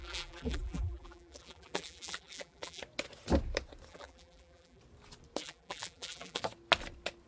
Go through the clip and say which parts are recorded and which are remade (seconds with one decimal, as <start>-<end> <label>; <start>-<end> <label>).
0.0-2.8 remade; 2.8-3.9 recorded; 3.9-4.8 remade; 4.8-5.4 recorded; 5.4-6.4 remade; 6.4-7.3 recorded

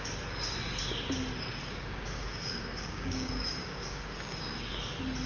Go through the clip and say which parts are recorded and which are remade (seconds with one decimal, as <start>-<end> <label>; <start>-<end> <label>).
0.0-1.6 recorded; 1.6-4.8 remade; 4.8-5.3 recorded

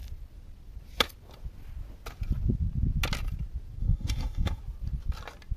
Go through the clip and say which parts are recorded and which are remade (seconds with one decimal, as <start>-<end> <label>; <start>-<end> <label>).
0.0-3.8 recorded; 3.8-4.6 remade; 4.6-5.6 recorded

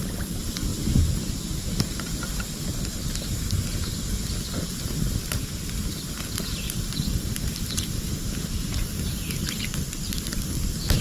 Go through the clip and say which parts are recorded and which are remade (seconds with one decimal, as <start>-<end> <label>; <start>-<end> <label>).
0.0-0.7 remade; 0.7-1.8 recorded; 1.8-11.0 remade

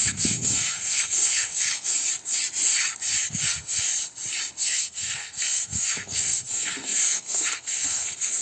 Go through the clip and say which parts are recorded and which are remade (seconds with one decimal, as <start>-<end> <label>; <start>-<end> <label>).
0.0-2.0 remade; 2.0-3.3 recorded; 3.3-3.9 remade; 3.9-4.6 recorded; 4.6-8.4 remade